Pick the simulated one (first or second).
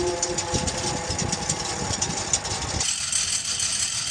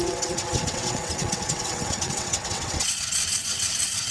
second